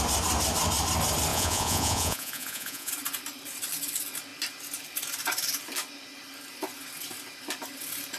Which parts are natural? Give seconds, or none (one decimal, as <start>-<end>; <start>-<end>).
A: 0.0-1.3; 2.9-8.2